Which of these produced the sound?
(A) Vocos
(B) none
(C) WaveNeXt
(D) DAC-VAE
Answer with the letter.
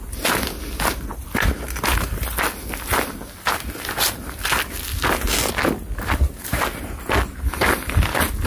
B